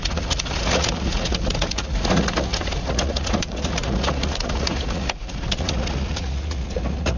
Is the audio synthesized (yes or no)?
yes